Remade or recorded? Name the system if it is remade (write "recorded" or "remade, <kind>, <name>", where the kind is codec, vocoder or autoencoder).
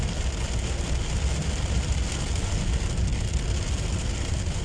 recorded